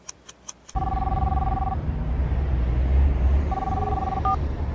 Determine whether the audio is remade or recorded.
recorded